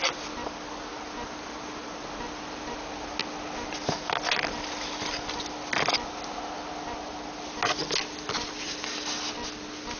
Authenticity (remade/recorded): recorded